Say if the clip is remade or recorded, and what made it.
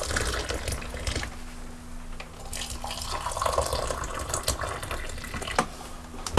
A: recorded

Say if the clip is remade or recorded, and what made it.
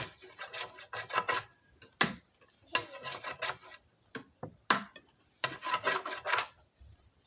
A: recorded